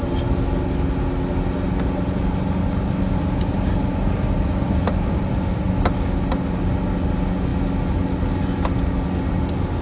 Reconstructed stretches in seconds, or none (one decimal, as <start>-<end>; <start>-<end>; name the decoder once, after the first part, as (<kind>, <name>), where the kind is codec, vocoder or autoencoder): none